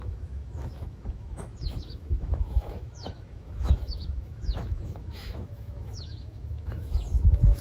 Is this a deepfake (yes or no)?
yes